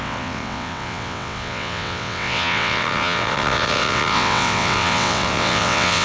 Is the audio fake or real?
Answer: fake